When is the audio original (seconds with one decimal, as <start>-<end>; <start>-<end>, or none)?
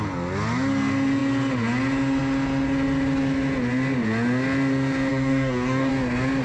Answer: 0.0-5.1; 5.9-6.4